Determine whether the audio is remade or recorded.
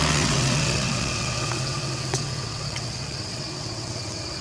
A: remade